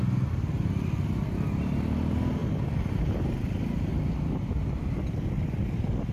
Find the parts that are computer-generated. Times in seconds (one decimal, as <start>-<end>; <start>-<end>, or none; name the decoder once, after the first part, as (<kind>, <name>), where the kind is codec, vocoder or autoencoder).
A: 2.4-3.0 (vocoder, BigVGAN v2); 3.9-5.2